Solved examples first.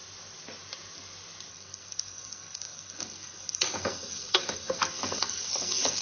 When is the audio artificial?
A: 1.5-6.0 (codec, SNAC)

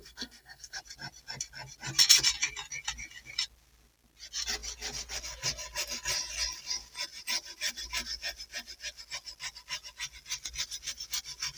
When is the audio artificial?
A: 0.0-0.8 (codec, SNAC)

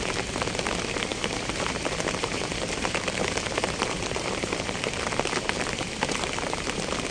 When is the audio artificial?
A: 1.1-4.9 (vocoder, BigVGAN v2)